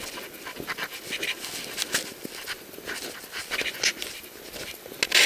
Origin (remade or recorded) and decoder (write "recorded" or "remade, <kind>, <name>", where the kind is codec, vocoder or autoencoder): recorded